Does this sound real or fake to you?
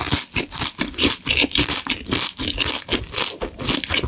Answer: real